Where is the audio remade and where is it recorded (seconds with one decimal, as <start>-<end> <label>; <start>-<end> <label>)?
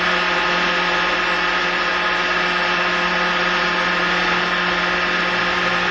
0.0-5.9 recorded